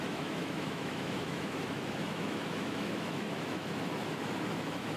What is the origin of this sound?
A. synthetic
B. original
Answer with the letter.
A